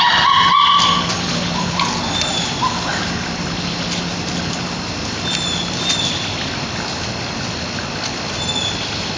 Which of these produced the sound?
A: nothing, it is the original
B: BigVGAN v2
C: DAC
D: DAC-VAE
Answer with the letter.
A